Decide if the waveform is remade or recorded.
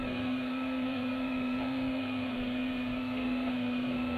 remade